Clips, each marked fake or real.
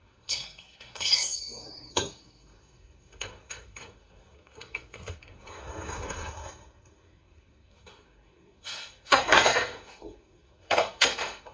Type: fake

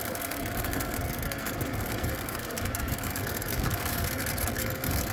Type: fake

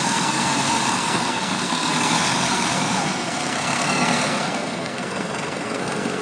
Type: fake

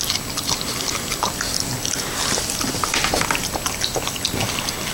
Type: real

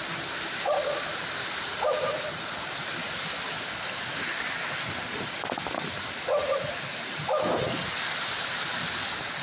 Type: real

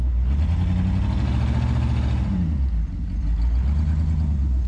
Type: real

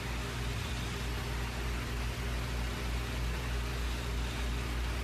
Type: real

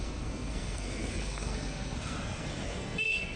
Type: fake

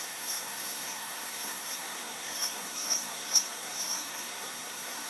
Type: fake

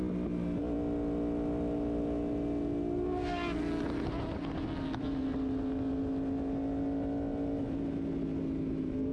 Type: real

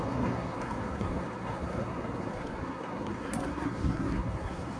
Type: fake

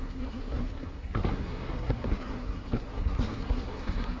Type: fake